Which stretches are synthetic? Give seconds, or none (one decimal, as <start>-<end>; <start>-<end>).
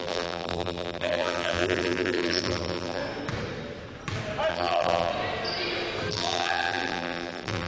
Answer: 0.0-3.0; 4.5-5.1; 6.1-7.7